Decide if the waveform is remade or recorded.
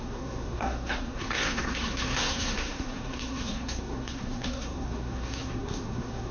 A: remade